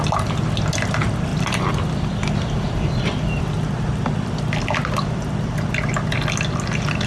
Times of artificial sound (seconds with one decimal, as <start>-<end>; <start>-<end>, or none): none